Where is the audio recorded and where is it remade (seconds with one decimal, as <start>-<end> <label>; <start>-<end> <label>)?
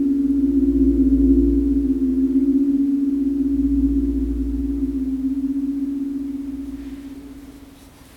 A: 0.0-8.2 recorded